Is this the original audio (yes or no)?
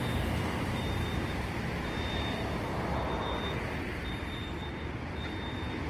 no